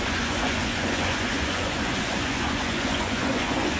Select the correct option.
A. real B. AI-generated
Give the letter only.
B